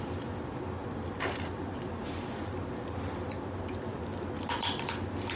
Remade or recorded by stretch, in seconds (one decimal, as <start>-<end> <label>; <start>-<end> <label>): 0.0-5.4 recorded